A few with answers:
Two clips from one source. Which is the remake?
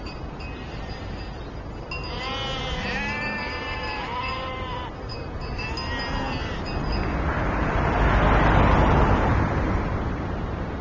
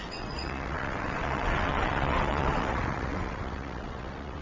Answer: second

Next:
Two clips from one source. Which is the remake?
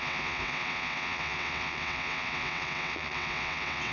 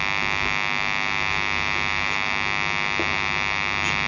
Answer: first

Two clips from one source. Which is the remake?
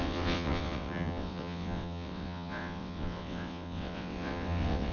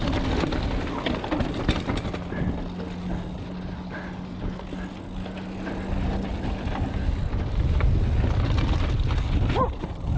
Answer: first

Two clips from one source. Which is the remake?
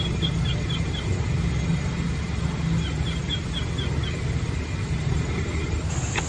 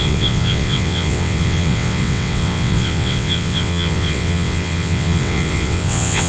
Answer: second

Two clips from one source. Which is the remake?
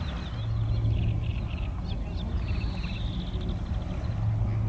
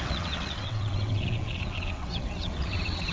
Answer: second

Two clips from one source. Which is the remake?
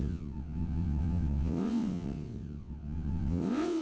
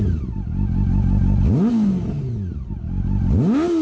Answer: first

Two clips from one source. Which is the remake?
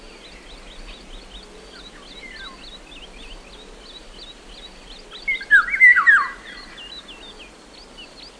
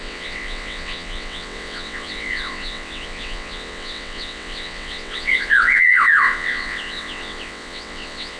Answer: second